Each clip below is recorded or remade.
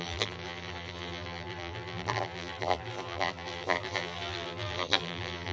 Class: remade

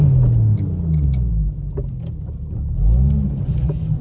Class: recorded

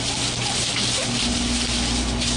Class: recorded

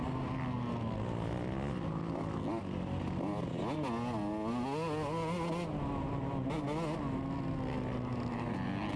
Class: recorded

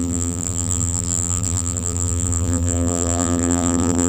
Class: remade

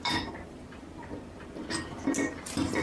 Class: remade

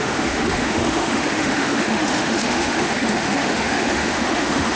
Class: remade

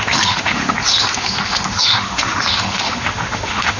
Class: remade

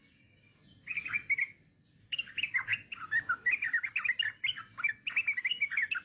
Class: recorded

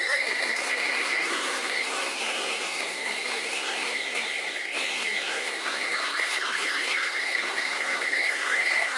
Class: remade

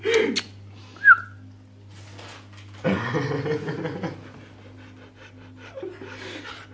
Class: recorded